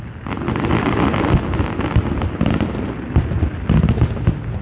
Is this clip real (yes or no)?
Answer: yes